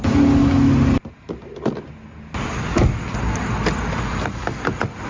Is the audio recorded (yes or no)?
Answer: yes